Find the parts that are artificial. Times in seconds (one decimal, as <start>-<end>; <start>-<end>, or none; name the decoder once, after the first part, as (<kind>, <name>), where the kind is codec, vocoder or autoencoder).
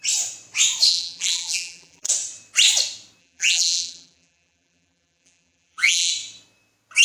0.9-2.1 (vocoder, BigVGAN v2); 3.2-6.1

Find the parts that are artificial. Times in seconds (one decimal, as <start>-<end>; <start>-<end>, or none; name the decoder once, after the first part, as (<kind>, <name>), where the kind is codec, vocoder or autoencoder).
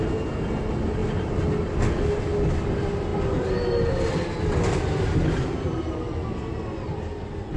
none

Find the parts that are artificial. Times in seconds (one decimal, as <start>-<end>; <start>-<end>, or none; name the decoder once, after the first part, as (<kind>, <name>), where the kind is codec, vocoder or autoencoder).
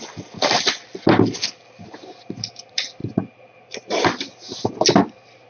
none